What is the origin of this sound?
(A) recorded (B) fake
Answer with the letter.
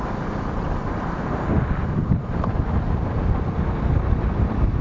A